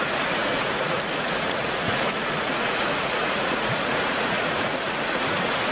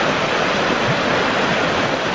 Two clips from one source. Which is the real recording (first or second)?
second